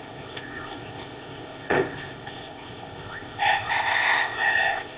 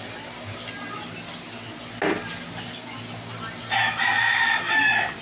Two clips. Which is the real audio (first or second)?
second